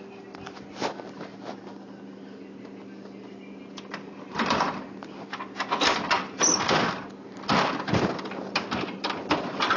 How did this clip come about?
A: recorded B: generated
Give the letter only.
A